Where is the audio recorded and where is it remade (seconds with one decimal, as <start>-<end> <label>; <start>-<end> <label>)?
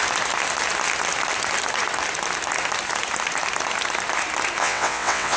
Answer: 0.0-4.6 recorded; 4.6-5.4 remade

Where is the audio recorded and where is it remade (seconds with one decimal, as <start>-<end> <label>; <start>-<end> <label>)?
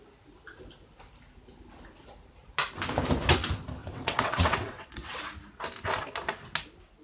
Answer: 0.0-3.8 recorded; 3.8-5.2 remade; 5.2-7.0 recorded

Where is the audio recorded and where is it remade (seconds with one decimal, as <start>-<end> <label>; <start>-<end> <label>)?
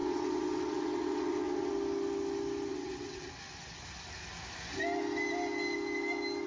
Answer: 0.0-1.7 remade; 1.7-2.7 recorded; 2.7-3.3 remade; 3.3-6.5 recorded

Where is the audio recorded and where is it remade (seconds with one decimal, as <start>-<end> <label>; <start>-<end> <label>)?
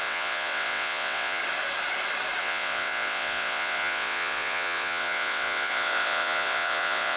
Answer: 0.0-1.4 remade; 1.4-2.4 recorded; 2.4-7.2 remade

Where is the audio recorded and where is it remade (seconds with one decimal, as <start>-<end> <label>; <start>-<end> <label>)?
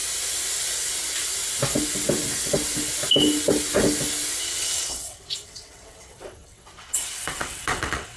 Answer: 0.0-4.4 recorded; 4.4-8.2 remade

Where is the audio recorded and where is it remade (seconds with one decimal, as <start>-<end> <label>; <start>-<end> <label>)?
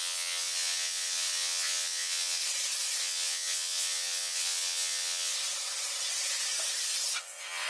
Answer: 0.0-2.4 remade; 2.4-3.0 recorded; 3.0-5.3 remade; 5.3-7.2 recorded; 7.2-7.7 remade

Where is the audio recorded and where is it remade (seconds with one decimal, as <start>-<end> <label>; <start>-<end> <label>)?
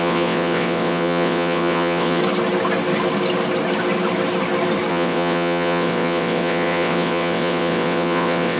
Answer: 0.0-2.2 remade; 2.2-4.9 recorded; 4.9-8.6 remade